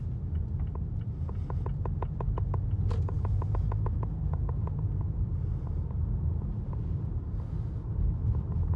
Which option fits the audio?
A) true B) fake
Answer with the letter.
A